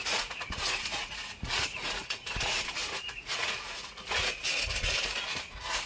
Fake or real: fake